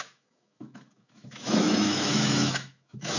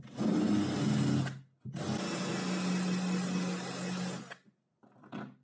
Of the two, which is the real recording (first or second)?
second